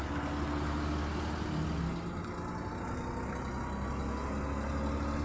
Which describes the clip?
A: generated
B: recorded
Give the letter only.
B